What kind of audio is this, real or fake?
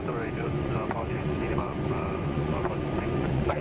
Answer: fake